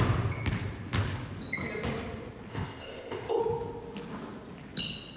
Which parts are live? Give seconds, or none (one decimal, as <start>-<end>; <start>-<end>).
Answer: 0.0-2.5; 3.4-5.2